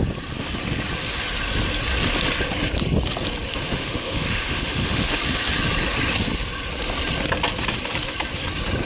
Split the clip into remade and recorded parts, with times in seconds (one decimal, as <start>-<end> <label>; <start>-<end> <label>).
0.0-3.5 recorded; 3.5-5.2 remade; 5.2-8.9 recorded